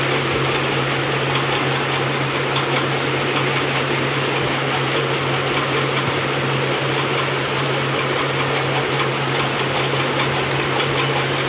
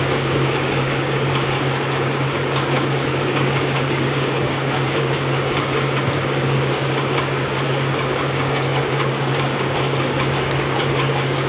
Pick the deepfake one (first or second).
second